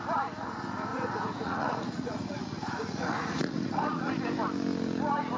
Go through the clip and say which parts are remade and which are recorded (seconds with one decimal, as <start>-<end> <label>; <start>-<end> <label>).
0.0-0.9 recorded; 0.9-4.1 remade; 4.1-5.4 recorded